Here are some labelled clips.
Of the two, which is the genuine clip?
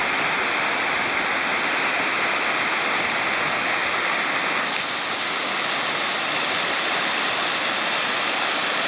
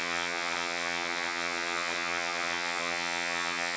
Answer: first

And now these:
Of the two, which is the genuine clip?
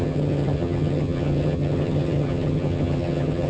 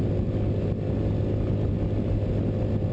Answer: second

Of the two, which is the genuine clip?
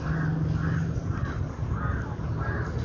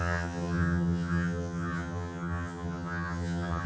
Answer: first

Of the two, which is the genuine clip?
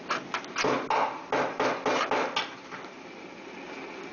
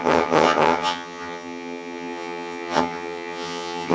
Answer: first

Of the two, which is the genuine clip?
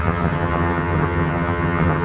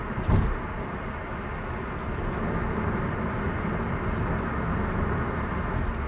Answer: second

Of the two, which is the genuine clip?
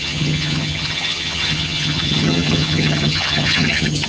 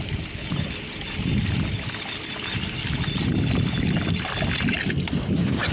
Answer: second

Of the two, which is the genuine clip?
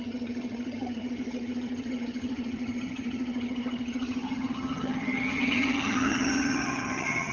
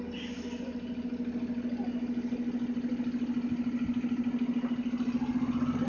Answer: second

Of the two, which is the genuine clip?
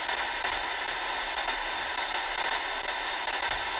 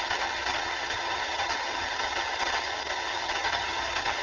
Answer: first